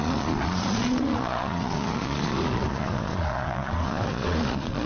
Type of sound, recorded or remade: remade